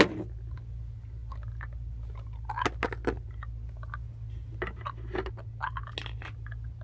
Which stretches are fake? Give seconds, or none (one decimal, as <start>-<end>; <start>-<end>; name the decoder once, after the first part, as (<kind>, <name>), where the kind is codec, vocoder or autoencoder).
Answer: none